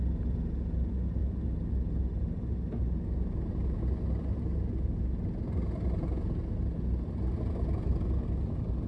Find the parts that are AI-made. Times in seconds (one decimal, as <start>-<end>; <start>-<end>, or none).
none